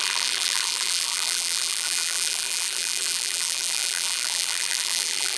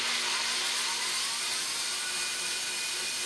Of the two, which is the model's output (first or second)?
first